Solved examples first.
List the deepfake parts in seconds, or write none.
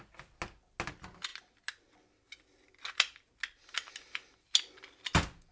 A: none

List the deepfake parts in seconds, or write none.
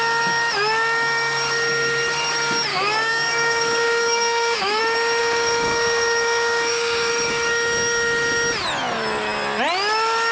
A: 2.7-4.8 (codec, DAC); 5.2-7.1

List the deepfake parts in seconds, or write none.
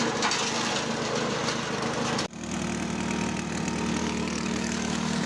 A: 4.0-5.3 (codec, DAC)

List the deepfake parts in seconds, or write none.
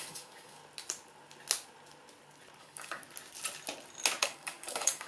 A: 0.0-0.6 (codec, DAC); 2.6-3.0; 4.2-5.1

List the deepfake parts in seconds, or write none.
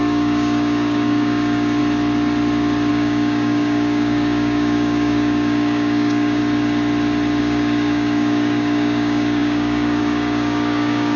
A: 0.0-1.8 (codec, DAC); 2.9-6.4; 7.4-11.2